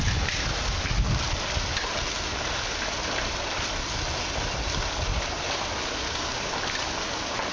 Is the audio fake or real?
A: real